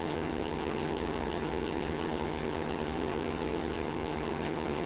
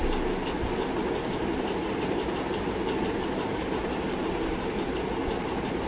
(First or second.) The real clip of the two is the second